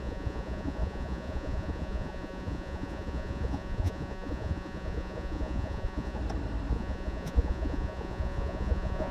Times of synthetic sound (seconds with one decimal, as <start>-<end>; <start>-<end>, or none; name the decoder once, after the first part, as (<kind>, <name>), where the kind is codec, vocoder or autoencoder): 0.0-6.2 (vocoder, Vocos); 6.7-9.1